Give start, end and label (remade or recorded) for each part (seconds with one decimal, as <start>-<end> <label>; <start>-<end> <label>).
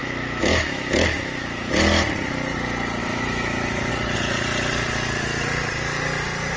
0.0-1.7 remade; 1.7-3.0 recorded; 3.0-3.9 remade; 3.9-6.6 recorded